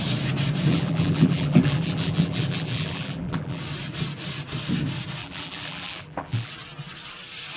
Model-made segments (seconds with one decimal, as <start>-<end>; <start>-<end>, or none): 0.7-3.6; 5.2-6.5